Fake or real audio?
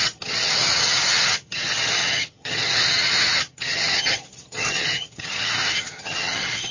fake